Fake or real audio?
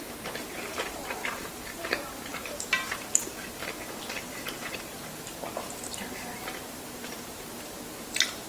fake